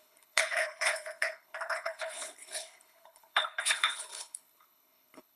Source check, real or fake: fake